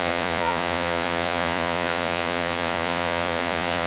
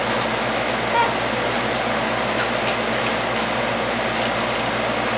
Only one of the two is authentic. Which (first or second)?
second